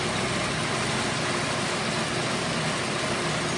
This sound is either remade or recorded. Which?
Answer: recorded